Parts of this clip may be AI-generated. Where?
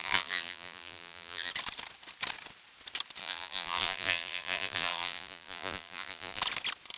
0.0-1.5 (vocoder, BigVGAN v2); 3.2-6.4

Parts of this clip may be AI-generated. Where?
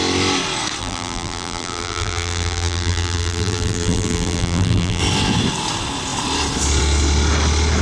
0.8-5.0 (vocoder, BigVGAN v2)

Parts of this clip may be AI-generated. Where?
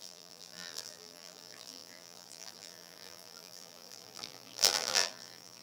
0.0-5.6 (vocoder, BigVGAN v2)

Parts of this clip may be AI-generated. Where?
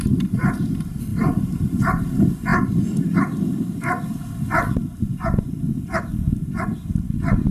1.1-2.1 (vocoder, BigVGAN v2)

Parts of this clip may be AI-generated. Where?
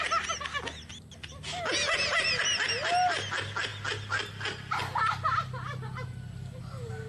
none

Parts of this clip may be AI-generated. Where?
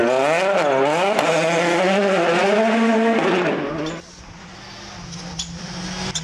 none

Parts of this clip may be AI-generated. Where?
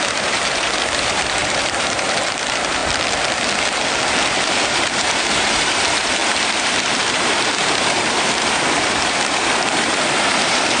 0.0-2.8 (vocoder, BigVGAN v2); 4.4-10.8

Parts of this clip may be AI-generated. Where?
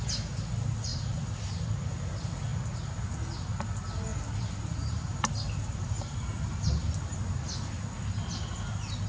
0.9-1.5 (vocoder, BigVGAN v2); 4.1-6.4